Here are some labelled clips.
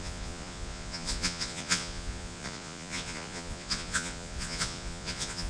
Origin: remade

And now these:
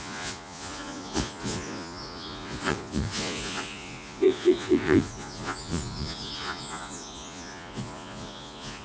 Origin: remade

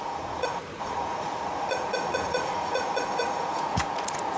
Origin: remade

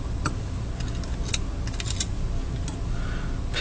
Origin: recorded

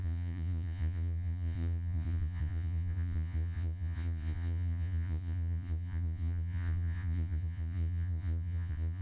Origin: remade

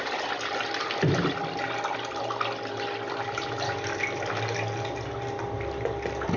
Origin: recorded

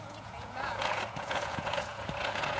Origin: remade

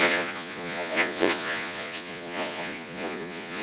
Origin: remade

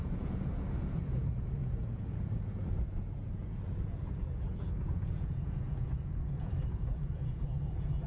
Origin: remade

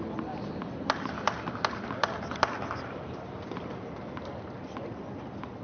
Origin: recorded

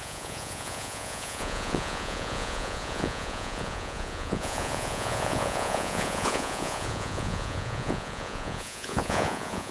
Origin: remade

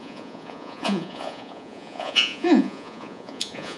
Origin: remade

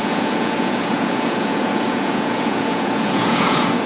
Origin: remade